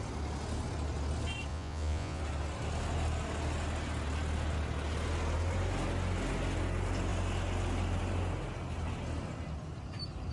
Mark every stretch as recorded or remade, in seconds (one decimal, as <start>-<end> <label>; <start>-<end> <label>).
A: 0.0-1.5 recorded; 1.5-2.2 remade; 2.2-10.3 recorded